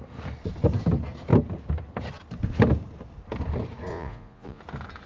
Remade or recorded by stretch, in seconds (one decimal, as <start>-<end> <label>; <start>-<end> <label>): 0.0-3.9 recorded; 3.9-4.6 remade; 4.6-5.1 recorded